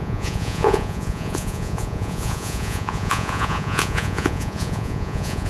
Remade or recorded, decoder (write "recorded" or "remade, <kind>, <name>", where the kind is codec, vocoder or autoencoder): remade, vocoder, Vocos